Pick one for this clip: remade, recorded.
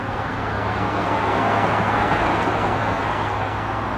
remade